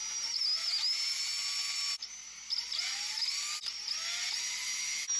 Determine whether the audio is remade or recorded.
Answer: recorded